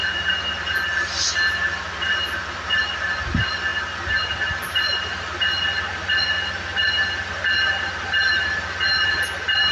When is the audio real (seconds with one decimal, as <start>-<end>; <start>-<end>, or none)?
0.0-9.7